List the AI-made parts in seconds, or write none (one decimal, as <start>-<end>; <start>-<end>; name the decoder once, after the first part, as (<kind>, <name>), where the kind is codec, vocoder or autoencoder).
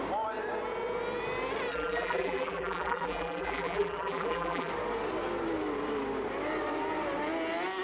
1.7-4.7 (vocoder, BigVGAN v2)